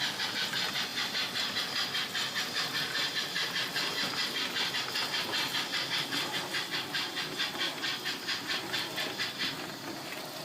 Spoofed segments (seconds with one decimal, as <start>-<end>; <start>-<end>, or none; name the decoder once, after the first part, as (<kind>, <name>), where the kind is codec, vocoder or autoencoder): 0.9-4.7 (vocoder, BigVGAN v2)